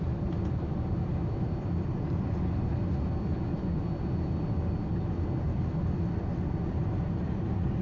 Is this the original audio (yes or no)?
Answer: yes